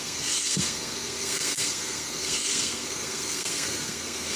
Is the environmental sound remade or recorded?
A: remade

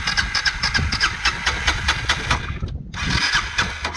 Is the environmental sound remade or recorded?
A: recorded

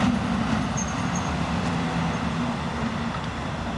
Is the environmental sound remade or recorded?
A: recorded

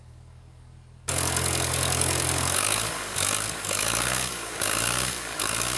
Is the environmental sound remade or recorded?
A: remade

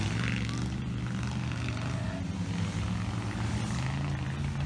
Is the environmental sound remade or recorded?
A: recorded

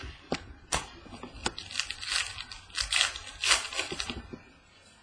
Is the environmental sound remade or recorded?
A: recorded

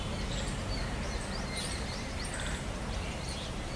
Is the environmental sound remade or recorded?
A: remade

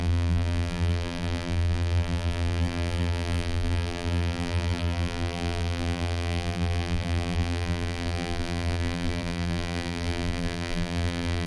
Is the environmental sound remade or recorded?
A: remade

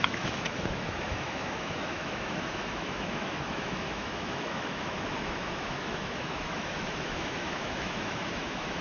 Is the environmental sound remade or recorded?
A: remade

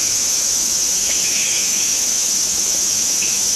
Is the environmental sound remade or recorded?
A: remade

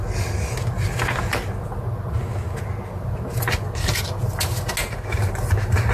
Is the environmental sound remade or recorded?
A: recorded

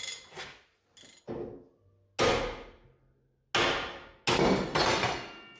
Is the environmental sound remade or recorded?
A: recorded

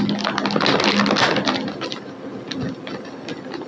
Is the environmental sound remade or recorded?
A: recorded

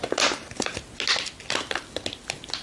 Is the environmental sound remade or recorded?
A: recorded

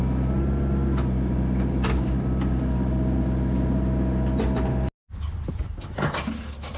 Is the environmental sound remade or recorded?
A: recorded